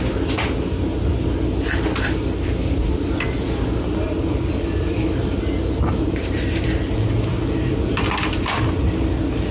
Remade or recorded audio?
recorded